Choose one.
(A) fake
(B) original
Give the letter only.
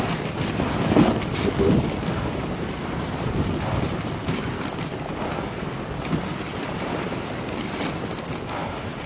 B